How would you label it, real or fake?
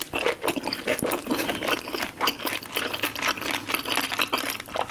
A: real